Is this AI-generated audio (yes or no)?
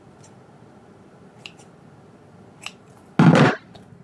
no